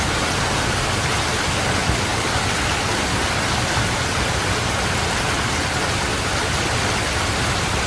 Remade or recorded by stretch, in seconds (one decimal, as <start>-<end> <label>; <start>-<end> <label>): 0.0-7.9 recorded